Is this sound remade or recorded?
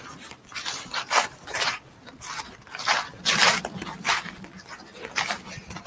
remade